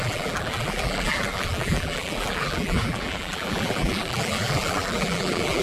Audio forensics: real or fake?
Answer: fake